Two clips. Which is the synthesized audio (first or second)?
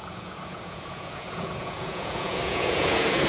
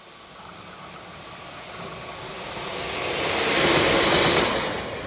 first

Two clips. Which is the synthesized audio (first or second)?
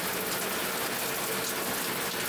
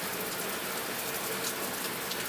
second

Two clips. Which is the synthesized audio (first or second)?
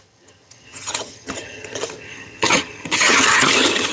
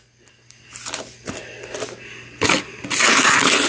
first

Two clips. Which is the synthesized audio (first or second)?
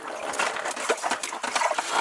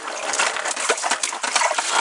second